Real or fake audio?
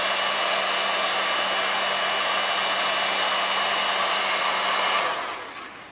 real